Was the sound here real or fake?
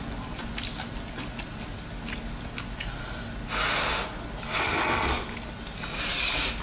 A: real